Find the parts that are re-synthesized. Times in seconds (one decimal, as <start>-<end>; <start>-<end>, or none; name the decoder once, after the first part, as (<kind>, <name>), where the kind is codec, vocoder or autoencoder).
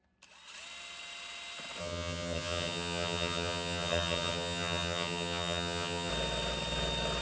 1.8-6.1 (vocoder, HiFi-GAN)